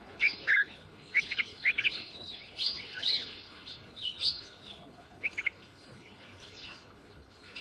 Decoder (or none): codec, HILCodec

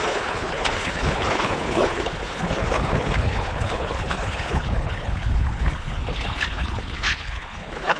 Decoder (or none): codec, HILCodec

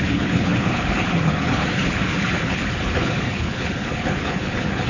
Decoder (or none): codec, HILCodec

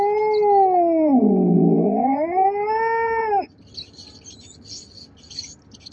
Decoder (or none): none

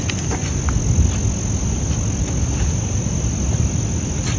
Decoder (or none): none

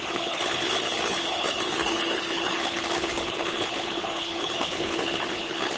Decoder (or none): codec, HILCodec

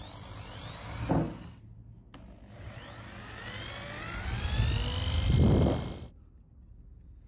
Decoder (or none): none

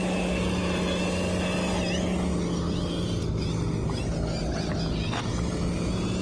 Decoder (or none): none